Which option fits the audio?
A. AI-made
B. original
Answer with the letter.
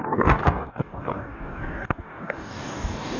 A